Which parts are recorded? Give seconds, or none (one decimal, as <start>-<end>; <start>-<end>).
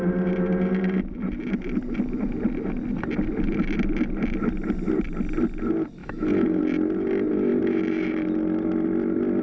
0.0-6.0; 6.6-9.4